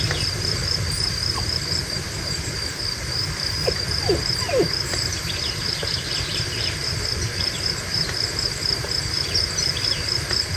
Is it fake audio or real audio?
fake